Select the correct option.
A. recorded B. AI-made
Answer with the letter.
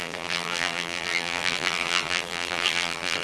B